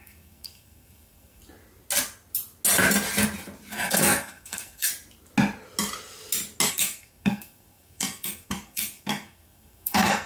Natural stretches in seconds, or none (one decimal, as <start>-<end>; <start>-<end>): 1.4-3.7; 4.9-6.7